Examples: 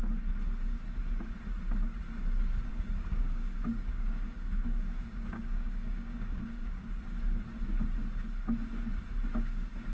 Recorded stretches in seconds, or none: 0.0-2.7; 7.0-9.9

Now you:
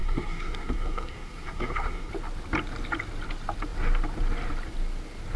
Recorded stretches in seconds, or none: 2.1-5.4

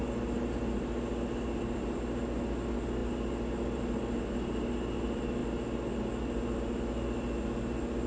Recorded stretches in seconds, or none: 0.0-8.1